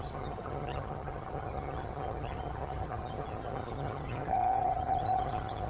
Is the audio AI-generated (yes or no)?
yes